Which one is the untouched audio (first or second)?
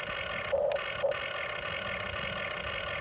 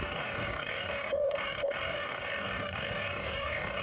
first